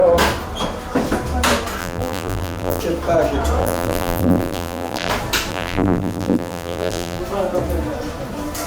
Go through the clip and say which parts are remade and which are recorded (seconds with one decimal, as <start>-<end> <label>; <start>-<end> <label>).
0.0-1.8 recorded; 1.8-2.8 remade; 2.8-3.6 recorded; 3.6-5.1 remade; 5.1-5.5 recorded; 5.5-7.2 remade; 7.2-8.7 recorded